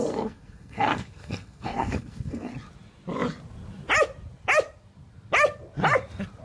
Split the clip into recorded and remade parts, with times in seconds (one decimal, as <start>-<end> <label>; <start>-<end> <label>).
0.0-2.5 remade; 2.5-6.4 recorded